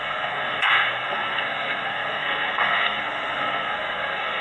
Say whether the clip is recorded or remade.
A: remade